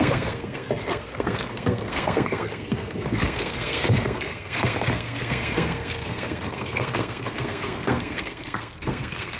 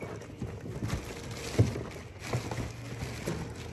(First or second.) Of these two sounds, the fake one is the first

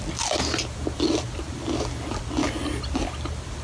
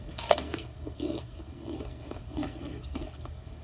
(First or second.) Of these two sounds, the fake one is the second